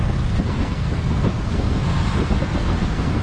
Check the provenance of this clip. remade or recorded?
remade